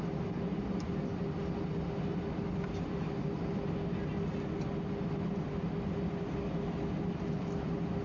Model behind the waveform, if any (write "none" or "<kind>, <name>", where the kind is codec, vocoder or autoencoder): none